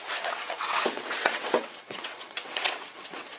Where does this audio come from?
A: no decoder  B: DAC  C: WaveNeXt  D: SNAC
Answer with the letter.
C